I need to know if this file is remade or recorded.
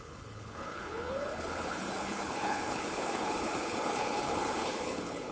remade